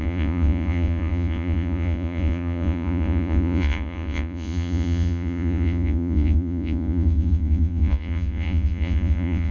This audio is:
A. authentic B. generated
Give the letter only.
B